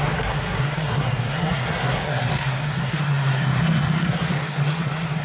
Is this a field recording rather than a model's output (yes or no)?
no